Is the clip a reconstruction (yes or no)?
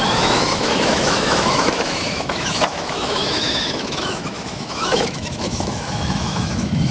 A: yes